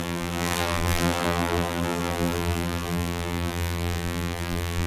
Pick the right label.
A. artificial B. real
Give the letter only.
A